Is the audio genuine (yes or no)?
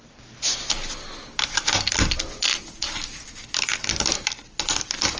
yes